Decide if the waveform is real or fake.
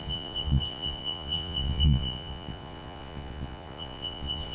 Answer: fake